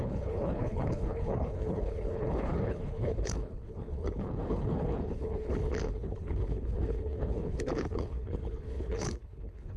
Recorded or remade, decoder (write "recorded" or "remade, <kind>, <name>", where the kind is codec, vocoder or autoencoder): remade, codec, HILCodec